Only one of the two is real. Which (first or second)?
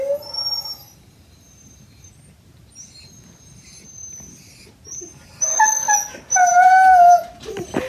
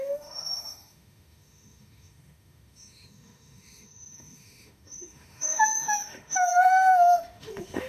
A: first